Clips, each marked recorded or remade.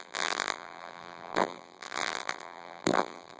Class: remade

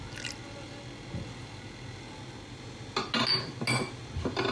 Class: recorded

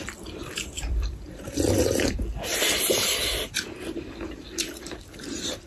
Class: remade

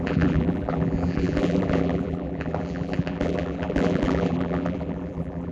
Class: remade